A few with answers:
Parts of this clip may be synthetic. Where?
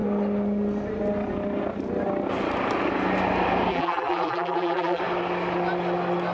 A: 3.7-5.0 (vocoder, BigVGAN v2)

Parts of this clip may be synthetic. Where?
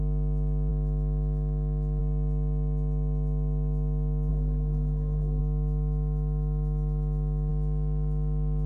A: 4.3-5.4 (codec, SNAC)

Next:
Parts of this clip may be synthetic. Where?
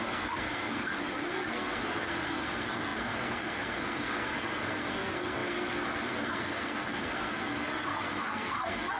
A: 0.0-9.0 (codec, SNAC)